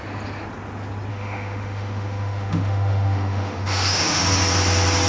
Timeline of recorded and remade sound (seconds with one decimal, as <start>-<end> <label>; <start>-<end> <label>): 0.0-1.1 recorded; 1.1-4.2 remade; 4.2-5.1 recorded